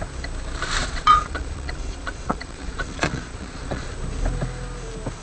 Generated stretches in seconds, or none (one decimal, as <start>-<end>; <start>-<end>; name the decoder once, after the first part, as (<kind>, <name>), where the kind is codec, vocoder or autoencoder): 0.8-3.9 (vocoder, Vocos)